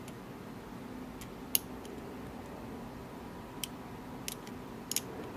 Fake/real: real